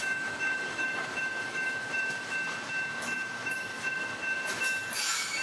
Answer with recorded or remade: remade